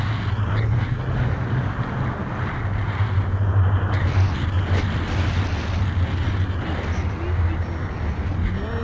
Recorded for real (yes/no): yes